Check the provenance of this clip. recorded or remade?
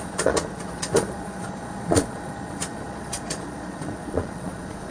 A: remade